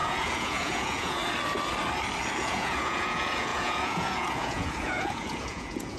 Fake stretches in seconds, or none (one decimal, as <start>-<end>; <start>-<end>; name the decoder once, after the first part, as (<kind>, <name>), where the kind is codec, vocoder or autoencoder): 0.0-1.2 (vocoder, Vocos); 2.4-6.0